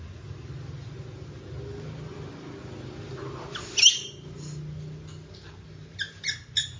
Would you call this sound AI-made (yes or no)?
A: no